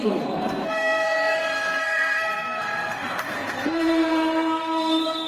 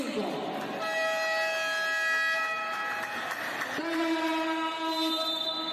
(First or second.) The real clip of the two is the second